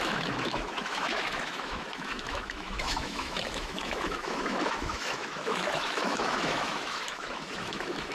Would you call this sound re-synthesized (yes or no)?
yes